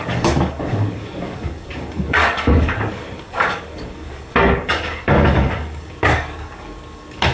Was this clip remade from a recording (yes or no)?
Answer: yes